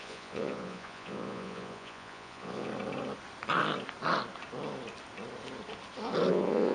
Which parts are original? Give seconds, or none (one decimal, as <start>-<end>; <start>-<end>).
2.7-6.3